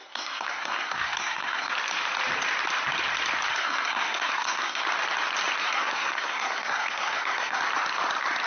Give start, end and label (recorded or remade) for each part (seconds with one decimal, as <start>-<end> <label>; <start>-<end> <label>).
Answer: 0.0-1.7 remade; 1.7-3.5 recorded; 3.5-4.8 remade; 4.8-5.6 recorded; 5.6-7.6 remade; 7.6-8.5 recorded